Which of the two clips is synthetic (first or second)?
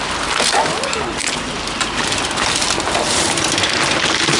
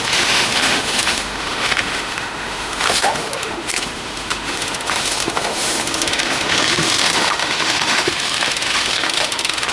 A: second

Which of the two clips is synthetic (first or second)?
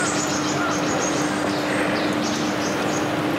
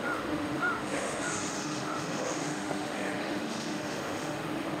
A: second